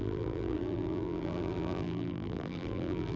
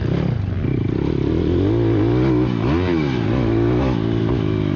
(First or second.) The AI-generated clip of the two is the first